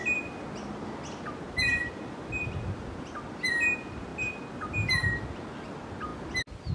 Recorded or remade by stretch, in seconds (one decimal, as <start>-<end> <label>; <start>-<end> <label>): 0.0-6.7 recorded